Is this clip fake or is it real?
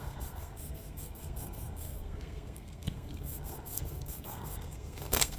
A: fake